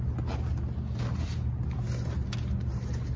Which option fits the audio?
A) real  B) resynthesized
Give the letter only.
A